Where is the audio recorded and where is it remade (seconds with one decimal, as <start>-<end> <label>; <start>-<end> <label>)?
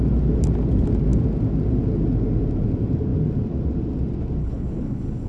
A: 0.0-4.4 recorded; 4.4-5.3 remade